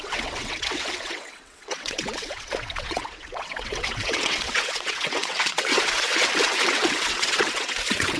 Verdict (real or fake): fake